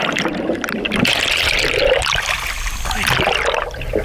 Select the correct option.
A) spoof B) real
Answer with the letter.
B